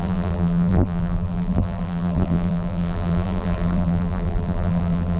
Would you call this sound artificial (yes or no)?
yes